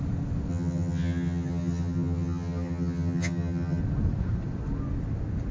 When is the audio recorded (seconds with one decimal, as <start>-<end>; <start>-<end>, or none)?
0.0-0.5; 3.8-5.5